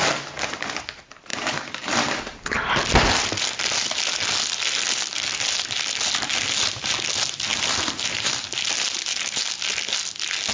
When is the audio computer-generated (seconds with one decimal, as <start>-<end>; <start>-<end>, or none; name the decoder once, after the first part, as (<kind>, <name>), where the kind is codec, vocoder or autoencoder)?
1.3-2.4 (vocoder, BigVGAN v2); 7.5-8.3